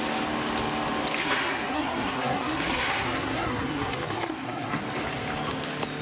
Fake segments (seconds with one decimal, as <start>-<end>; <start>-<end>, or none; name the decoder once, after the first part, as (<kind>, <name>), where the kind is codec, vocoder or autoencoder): 1.2-4.8 (codec, SNAC)

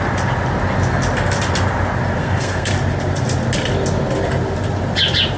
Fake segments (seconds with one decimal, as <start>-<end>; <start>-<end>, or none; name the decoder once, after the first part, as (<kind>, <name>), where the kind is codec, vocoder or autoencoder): 2.2-2.7 (codec, SNAC)

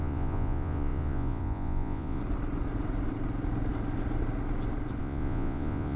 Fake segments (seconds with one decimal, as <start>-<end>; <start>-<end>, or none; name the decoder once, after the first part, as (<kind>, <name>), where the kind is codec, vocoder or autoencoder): 0.0-2.2 (vocoder, Vocos); 5.0-6.0

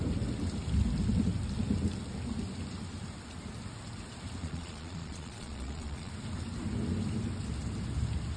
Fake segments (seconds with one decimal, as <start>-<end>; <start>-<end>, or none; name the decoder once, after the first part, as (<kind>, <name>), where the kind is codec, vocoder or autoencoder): 4.4-6.1 (vocoder, Vocos)

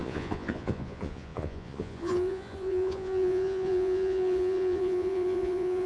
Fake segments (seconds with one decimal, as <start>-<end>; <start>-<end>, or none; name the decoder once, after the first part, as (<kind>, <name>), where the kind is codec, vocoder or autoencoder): 0.0-5.9 (vocoder, Vocos)

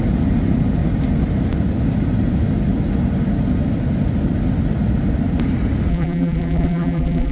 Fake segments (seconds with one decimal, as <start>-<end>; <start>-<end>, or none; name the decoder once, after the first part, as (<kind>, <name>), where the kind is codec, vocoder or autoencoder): 5.9-7.3 (vocoder, BigVGAN v2)